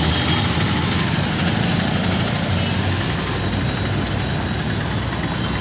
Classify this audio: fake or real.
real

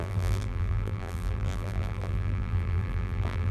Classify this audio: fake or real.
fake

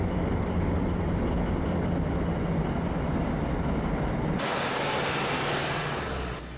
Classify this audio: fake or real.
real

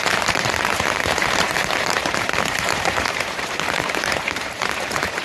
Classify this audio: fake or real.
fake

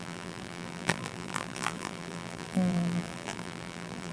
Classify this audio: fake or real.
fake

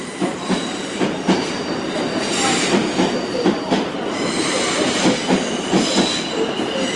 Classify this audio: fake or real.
fake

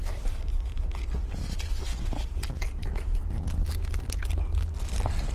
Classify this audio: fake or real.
real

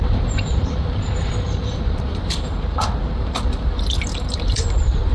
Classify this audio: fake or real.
fake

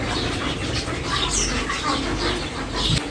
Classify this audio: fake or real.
real